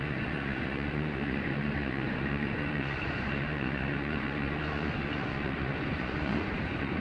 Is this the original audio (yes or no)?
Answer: no